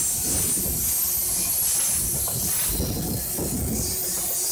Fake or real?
real